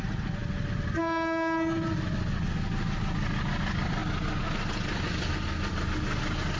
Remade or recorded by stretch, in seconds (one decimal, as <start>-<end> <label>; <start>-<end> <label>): 0.0-6.6 recorded